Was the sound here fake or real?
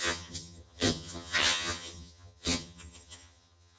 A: fake